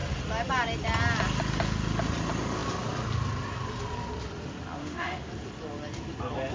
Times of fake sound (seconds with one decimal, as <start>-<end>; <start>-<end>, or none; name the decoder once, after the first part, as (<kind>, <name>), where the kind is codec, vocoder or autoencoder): 4.8-5.3 (autoencoder, DAC-VAE)